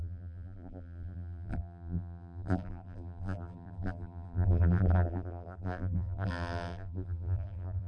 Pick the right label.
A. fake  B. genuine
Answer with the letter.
A